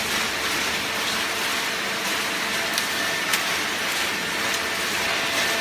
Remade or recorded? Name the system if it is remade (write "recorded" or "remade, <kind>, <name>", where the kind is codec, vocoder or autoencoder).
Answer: recorded